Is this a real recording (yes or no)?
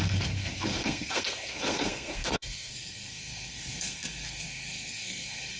no